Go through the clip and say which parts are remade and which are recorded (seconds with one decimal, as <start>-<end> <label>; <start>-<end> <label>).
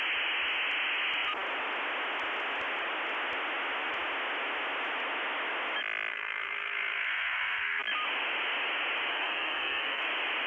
0.0-6.1 recorded; 6.1-7.8 remade; 7.8-9.1 recorded; 9.1-10.0 remade; 10.0-10.5 recorded